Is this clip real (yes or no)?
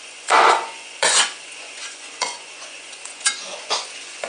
no